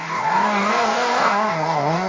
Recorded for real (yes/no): no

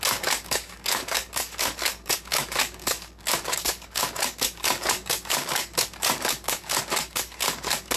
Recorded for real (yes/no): no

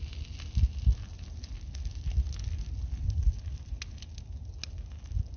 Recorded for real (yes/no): yes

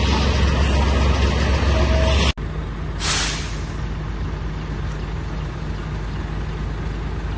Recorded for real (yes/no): yes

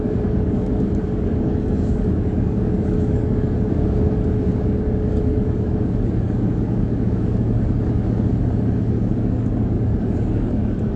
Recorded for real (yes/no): no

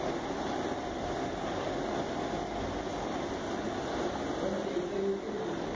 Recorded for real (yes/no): yes